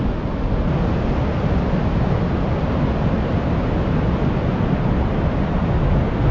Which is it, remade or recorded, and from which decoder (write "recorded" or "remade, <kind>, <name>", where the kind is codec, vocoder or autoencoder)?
recorded